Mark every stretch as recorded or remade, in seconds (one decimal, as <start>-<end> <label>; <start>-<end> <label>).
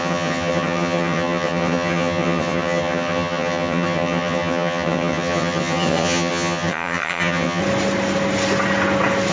0.0-7.6 remade; 7.6-9.3 recorded